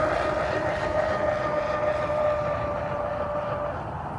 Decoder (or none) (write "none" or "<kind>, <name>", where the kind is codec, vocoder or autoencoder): none